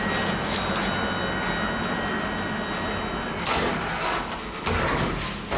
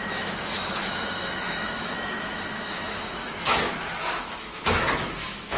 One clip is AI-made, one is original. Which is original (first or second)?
first